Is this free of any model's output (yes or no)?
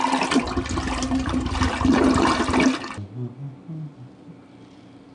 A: yes